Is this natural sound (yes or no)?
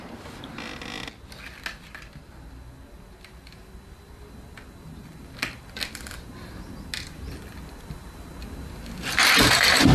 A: yes